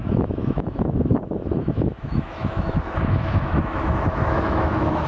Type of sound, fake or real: fake